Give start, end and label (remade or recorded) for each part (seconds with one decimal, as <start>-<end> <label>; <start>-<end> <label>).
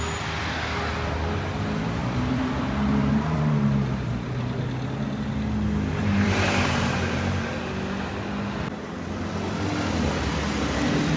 0.0-2.0 recorded; 2.0-4.7 remade; 4.7-6.0 recorded; 6.0-7.6 remade; 7.6-11.2 recorded